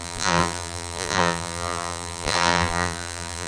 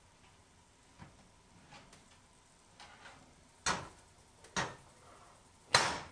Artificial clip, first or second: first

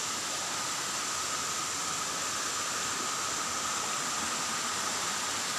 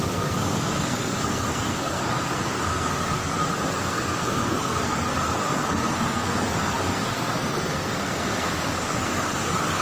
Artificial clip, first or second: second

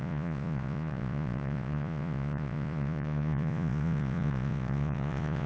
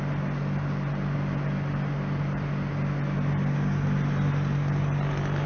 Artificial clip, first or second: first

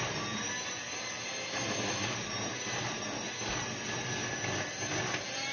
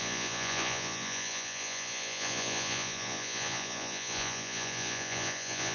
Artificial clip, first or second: second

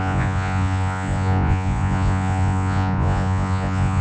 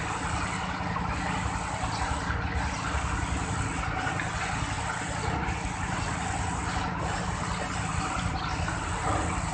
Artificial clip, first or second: first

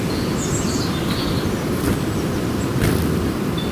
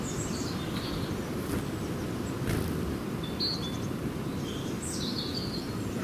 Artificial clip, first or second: first